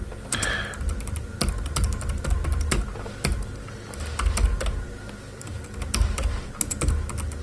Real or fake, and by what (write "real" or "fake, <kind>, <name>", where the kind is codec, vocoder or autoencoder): real